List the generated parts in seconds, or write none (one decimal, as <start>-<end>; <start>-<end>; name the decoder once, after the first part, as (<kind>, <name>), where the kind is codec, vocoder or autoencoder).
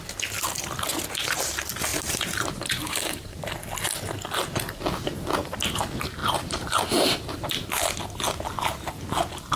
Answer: 1.9-3.4 (vocoder, BigVGAN v2); 6.2-7.4